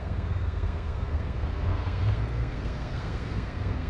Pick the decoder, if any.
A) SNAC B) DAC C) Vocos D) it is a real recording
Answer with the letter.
A